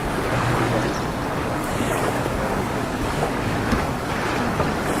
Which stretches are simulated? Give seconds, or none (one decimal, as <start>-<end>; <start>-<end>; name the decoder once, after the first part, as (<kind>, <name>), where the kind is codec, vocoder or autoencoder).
0.0-0.7 (codec, DAC); 1.4-4.1